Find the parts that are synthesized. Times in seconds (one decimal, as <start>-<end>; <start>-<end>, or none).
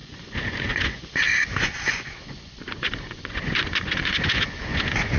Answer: 0.0-5.2